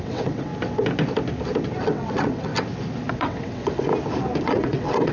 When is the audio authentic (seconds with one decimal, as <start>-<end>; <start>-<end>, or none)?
0.5-1.8; 2.5-3.1; 3.9-4.4